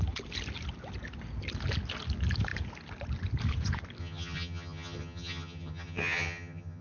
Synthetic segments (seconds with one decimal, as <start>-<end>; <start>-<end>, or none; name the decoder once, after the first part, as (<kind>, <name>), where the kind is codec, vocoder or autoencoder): 4.0-6.8 (vocoder, HiFi-GAN)

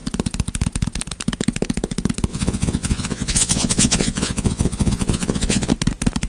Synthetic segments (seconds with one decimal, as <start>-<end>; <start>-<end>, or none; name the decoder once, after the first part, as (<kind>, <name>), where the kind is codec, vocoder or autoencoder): 2.3-5.7 (vocoder, Vocos)

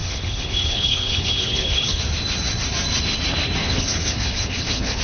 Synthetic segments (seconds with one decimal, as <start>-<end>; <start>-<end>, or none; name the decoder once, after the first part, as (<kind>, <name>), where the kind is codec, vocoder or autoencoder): 0.0-2.0 (codec, HILCodec); 3.6-5.0

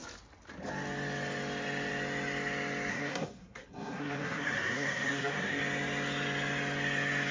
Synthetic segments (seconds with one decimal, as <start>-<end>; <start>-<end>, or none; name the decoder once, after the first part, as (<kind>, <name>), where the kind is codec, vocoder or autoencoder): 2.9-5.6 (codec, SNAC)

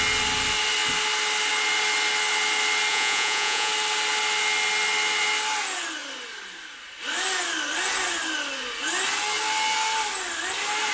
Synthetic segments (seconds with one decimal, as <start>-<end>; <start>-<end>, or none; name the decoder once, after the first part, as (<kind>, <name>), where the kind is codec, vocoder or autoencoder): 2.9-3.7 (vocoder, Vocos)

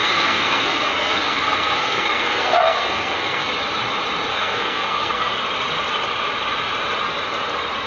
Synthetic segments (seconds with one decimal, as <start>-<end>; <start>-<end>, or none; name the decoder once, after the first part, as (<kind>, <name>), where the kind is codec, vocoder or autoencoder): 0.0-3.5 (codec, SNAC); 4.3-5.3

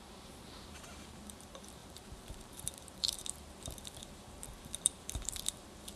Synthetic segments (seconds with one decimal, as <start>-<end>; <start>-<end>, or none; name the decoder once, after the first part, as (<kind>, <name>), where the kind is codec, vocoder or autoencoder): 0.0-6.0 (vocoder, BigVGAN v2)